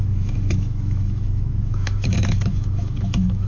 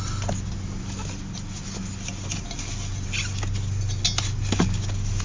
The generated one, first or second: first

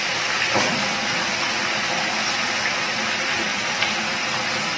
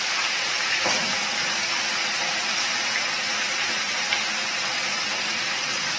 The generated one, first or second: second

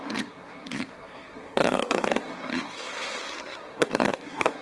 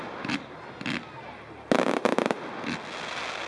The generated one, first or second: first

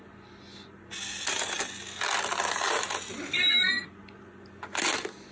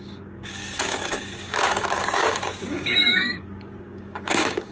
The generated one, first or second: second